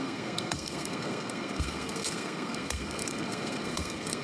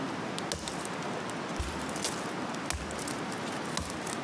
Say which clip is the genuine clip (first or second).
second